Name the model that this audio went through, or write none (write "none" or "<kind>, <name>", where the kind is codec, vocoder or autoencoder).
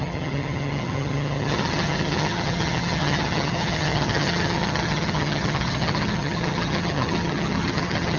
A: vocoder, HiFi-GAN